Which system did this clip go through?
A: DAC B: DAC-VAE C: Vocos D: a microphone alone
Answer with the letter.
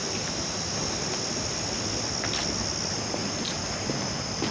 D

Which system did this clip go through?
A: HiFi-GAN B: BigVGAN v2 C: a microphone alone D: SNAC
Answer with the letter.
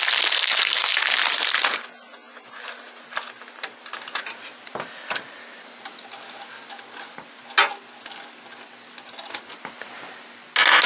C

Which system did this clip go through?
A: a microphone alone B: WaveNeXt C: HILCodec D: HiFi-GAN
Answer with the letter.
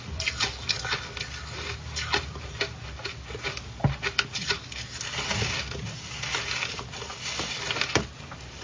A